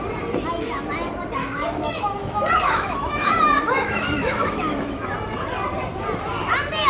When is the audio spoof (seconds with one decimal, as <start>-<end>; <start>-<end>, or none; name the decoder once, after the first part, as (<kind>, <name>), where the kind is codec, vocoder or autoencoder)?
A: 1.4-5.1 (autoencoder, DAC-VAE)